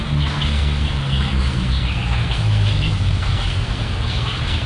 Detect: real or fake fake